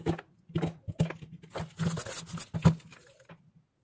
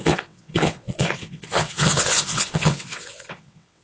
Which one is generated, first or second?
second